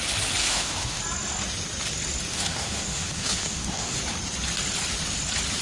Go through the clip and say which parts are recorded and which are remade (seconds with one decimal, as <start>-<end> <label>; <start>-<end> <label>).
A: 0.0-0.4 recorded; 0.4-1.0 remade; 1.0-2.3 recorded; 2.3-4.0 remade; 4.0-5.6 recorded